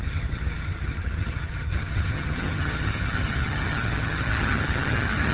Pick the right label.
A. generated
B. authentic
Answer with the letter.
A